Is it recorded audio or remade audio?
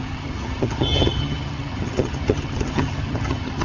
remade